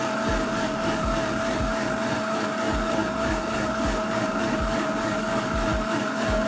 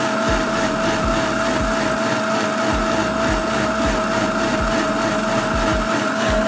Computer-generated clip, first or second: first